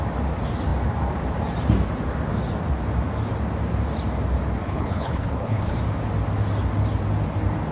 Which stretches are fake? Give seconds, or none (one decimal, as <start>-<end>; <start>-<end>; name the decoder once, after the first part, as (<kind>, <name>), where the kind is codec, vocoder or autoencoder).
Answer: 4.6-5.8 (codec, HILCodec)